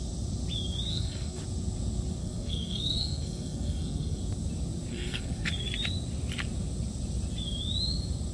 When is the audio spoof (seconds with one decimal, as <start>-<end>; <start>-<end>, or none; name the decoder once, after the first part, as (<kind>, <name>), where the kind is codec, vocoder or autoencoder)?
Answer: 0.9-1.4 (codec, SNAC); 2.2-4.2; 4.9-5.5